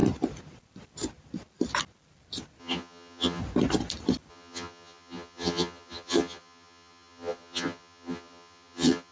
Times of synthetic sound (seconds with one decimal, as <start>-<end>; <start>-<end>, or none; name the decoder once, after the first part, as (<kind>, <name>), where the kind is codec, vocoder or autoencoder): 2.6-3.4 (vocoder, HiFi-GAN); 4.3-9.1